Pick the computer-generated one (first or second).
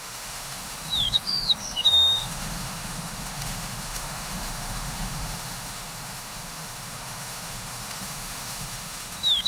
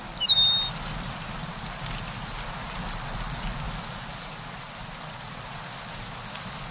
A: first